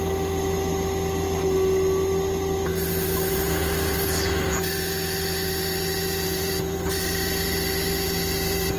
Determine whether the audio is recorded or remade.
recorded